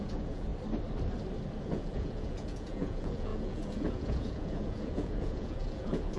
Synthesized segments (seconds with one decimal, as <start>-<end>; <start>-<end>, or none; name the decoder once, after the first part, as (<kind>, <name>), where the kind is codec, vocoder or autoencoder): 0.0-0.5 (vocoder, Vocos); 1.6-6.2